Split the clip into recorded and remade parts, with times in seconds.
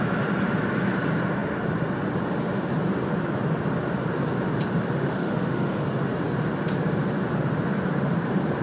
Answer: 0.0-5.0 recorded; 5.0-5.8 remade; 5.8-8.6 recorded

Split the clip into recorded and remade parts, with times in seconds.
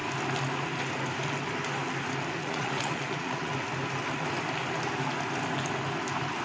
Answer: 0.0-2.4 recorded; 2.4-3.5 remade; 3.5-6.4 recorded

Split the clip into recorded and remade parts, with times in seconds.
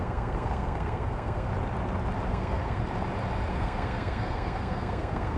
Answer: 0.0-1.5 remade; 1.5-2.3 recorded; 2.3-2.8 remade; 2.8-3.5 recorded; 3.5-5.4 remade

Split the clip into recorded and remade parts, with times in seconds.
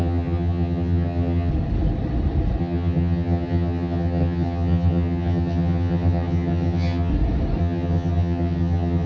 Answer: 0.0-1.5 remade; 1.5-2.6 recorded; 2.6-7.1 remade; 7.1-7.6 recorded; 7.6-9.1 remade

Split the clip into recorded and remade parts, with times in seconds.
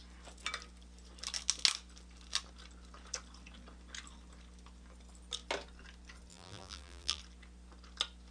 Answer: 0.0-6.3 recorded; 6.3-7.2 remade; 7.2-8.3 recorded